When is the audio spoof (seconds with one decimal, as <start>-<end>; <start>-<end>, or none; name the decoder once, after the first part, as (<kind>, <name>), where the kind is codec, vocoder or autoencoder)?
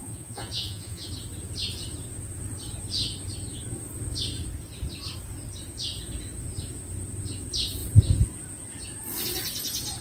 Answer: 0.0-1.1 (vocoder, Vocos)